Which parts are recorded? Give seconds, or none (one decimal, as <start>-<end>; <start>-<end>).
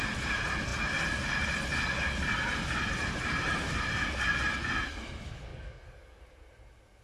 0.0-5.5; 6.2-7.0